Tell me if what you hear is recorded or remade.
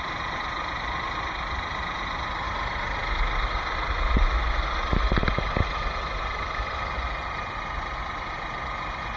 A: recorded